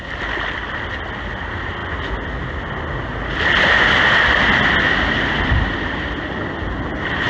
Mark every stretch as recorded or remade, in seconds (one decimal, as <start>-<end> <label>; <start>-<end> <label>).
0.0-7.3 recorded